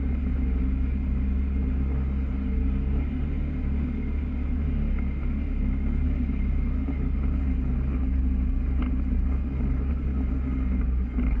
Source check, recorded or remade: recorded